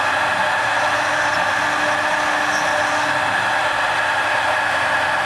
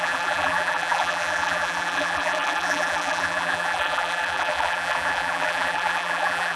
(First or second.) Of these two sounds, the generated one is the second